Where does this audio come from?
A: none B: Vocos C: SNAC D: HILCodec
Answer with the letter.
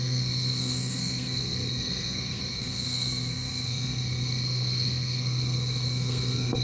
C